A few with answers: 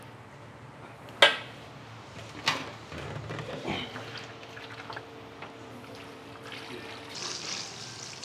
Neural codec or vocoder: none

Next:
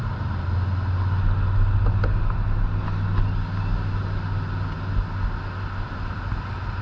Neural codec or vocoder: none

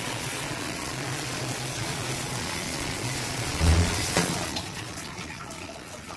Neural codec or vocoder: vocoder, Vocos